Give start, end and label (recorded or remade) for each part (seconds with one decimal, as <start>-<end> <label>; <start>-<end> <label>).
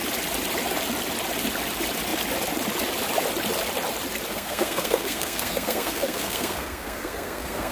0.0-4.3 recorded; 4.3-7.7 remade